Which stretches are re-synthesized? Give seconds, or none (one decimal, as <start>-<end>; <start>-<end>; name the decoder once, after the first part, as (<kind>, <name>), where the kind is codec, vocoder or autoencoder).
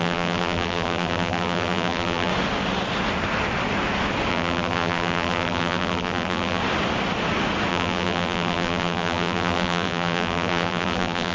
0.0-2.3 (vocoder, BigVGAN v2); 4.3-6.6; 7.7-11.3